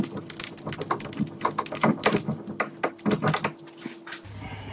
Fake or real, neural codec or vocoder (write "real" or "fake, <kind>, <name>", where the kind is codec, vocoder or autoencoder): real